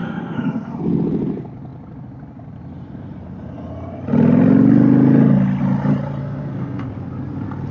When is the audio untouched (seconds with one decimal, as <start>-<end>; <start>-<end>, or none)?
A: 0.8-6.2; 6.8-7.7